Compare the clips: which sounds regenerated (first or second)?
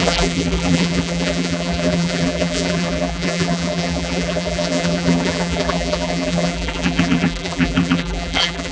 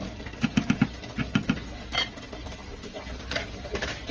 first